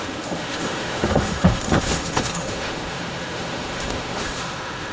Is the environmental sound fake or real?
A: fake